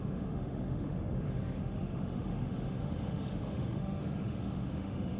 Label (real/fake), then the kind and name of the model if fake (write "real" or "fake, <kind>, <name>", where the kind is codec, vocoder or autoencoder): fake, autoencoder, DAC-VAE